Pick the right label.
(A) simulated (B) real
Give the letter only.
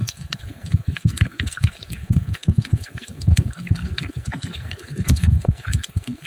A